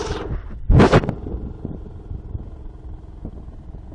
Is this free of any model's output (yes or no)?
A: yes